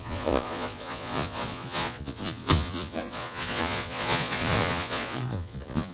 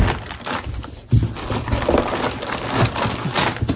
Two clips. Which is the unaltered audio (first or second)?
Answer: second